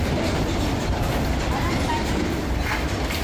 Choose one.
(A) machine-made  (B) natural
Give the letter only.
A